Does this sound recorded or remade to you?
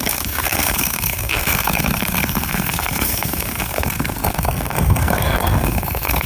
remade